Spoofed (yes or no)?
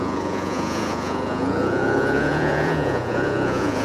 yes